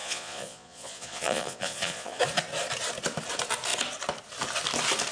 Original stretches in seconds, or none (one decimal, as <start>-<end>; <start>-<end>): 2.2-5.1